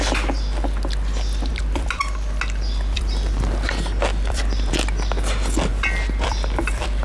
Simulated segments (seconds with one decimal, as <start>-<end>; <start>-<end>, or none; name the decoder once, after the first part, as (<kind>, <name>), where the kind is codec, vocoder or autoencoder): 1.5-4.7 (vocoder, BigVGAN v2); 5.7-7.0